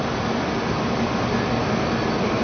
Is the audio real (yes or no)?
yes